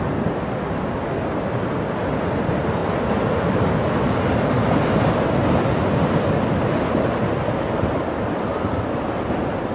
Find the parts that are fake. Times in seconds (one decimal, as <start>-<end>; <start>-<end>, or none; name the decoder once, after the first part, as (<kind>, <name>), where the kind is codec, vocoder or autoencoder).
none